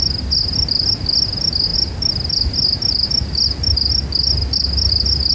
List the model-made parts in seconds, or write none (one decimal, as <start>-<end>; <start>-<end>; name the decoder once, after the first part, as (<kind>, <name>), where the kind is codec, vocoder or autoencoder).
none